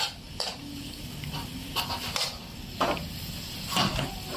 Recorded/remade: recorded